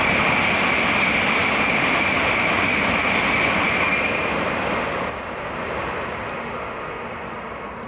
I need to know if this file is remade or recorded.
recorded